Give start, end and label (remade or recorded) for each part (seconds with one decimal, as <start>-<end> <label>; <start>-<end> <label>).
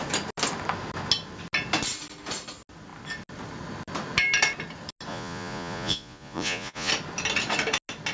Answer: 0.0-5.1 recorded; 5.1-6.9 remade; 6.9-8.1 recorded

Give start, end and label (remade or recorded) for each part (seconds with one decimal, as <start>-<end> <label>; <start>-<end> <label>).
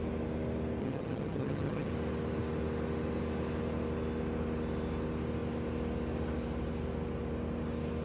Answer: 0.0-0.8 recorded; 0.8-1.9 remade; 1.9-8.0 recorded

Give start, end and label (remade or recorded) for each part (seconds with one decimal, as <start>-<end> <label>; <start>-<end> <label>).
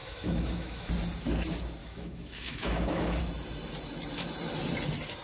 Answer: 0.0-0.9 remade; 0.9-1.8 recorded; 1.8-3.2 remade; 3.2-5.2 recorded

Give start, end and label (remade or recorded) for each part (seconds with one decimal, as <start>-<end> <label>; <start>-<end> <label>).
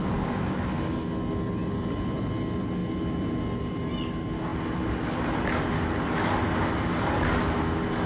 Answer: 0.0-8.1 recorded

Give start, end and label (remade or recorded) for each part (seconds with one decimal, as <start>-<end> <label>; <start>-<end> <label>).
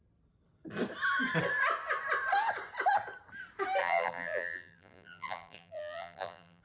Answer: 0.0-3.8 recorded; 3.8-6.6 remade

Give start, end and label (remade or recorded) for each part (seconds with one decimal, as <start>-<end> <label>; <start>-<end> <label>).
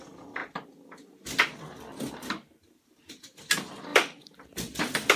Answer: 0.0-3.9 recorded; 3.9-4.8 remade; 4.8-5.2 recorded